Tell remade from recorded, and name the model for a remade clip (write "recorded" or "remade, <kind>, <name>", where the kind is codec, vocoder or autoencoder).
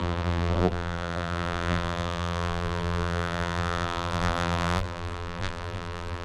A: remade, vocoder, BigVGAN v2